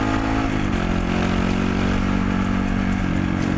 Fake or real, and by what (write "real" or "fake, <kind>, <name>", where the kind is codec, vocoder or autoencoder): real